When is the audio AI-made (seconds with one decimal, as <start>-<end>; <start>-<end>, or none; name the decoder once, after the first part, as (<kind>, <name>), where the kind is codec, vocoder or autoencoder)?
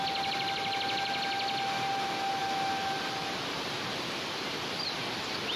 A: none